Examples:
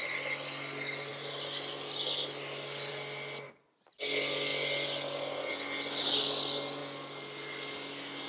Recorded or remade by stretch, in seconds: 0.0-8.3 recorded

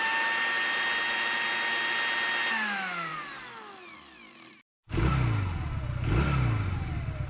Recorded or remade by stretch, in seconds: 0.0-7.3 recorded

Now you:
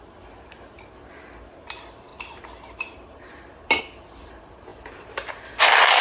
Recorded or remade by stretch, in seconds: 0.0-6.0 recorded